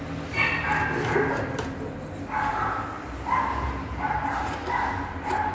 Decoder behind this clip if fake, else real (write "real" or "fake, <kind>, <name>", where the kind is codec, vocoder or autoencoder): real